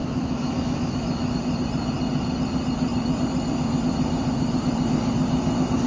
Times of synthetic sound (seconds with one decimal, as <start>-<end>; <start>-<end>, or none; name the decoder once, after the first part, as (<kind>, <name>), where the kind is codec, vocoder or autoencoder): 0.0-1.3 (autoencoder, DAC-VAE)